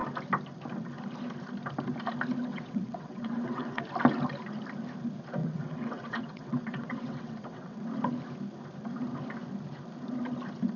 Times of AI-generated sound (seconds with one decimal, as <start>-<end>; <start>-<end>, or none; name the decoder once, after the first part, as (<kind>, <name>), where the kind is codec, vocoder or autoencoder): 2.5-3.8 (vocoder, WaveNeXt); 5.4-7.8